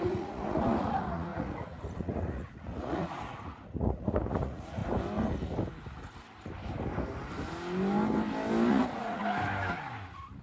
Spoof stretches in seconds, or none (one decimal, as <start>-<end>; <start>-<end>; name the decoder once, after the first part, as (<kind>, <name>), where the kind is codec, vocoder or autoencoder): 0.0-4.8 (vocoder, Vocos); 8.7-9.2

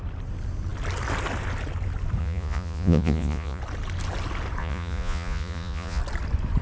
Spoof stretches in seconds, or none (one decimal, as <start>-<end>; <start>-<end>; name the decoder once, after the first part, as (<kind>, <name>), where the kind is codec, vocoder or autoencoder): 2.2-3.6 (vocoder, Vocos); 4.6-6.0

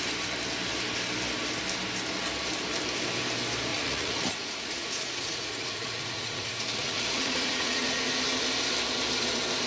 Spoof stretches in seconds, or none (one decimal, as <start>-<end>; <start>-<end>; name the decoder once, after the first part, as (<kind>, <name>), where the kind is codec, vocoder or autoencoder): 3.7-8.0 (vocoder, Vocos)

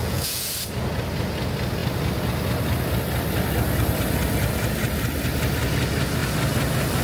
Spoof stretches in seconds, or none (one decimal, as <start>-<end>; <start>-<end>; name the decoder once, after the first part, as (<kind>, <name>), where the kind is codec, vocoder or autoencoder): 0.0-0.5 (vocoder, Vocos)

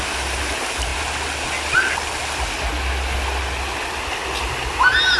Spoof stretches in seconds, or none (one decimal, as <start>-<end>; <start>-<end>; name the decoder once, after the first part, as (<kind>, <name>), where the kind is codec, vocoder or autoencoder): none

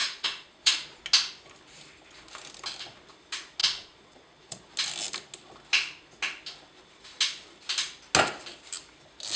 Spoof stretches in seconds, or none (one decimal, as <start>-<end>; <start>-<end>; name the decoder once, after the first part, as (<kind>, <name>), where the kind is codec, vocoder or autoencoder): 0.0-1.0 (vocoder, Vocos); 3.6-4.7

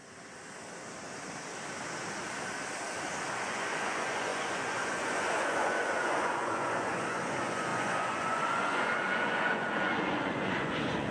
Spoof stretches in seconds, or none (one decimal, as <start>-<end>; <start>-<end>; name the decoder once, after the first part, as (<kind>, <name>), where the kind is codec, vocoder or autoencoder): 3.3-11.1 (vocoder, Vocos)

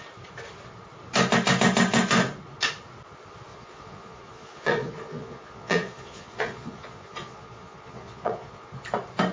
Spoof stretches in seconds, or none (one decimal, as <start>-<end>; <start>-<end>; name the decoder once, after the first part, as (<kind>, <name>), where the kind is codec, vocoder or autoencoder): 3.5-8.7 (vocoder, Vocos)